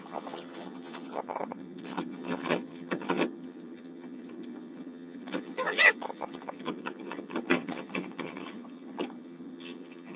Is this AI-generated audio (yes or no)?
yes